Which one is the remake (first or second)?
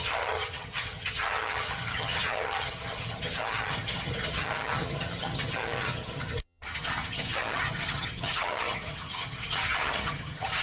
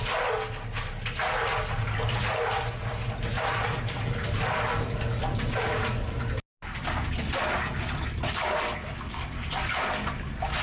first